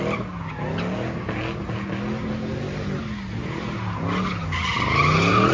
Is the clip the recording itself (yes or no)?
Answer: yes